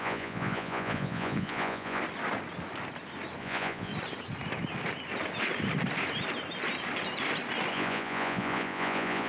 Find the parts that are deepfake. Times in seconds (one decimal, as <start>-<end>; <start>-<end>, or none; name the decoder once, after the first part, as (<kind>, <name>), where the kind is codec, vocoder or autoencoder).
0.0-2.0 (vocoder, Vocos); 3.4-3.9; 7.7-9.3